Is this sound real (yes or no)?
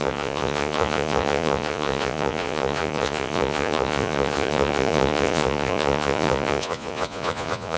no